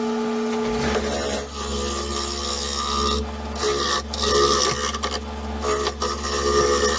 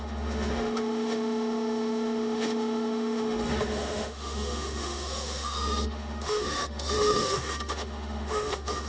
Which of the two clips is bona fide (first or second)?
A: first